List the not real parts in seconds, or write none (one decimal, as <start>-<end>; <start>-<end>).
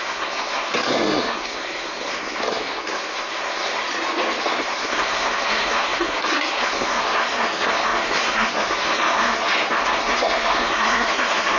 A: 0.0-3.8; 4.4-11.6